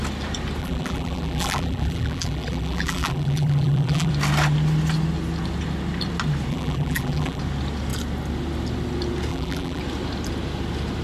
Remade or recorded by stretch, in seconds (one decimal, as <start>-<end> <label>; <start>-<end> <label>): 0.0-0.6 recorded; 0.6-4.1 remade; 4.1-6.5 recorded; 6.5-7.4 remade; 7.4-9.3 recorded; 9.3-9.8 remade; 9.8-11.0 recorded

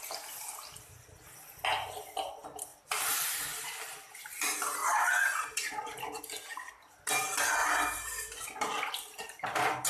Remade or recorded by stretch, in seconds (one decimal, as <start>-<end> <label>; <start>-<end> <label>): 0.0-2.7 recorded; 2.7-3.6 remade; 3.6-7.6 recorded; 7.6-9.5 remade; 9.5-9.9 recorded

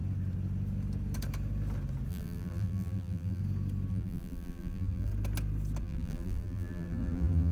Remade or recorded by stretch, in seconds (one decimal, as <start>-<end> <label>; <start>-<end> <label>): 0.0-2.1 recorded; 2.1-3.4 remade; 3.4-3.9 recorded; 3.9-5.1 remade; 5.1-5.8 recorded; 5.8-7.5 remade

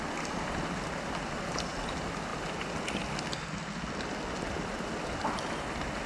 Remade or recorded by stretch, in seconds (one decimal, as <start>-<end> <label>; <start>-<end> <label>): 0.0-6.1 recorded

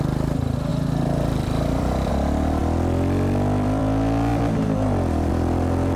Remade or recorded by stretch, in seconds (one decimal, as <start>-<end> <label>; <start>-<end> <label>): 0.0-0.7 recorded; 0.7-2.1 remade; 2.1-2.6 recorded; 2.6-3.8 remade; 3.8-6.0 recorded